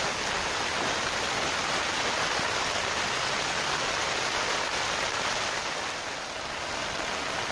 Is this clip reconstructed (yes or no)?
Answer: no